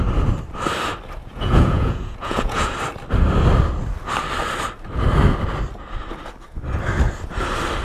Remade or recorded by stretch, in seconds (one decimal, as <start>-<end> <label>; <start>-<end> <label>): 0.0-1.2 recorded; 1.2-2.7 remade; 2.7-7.8 recorded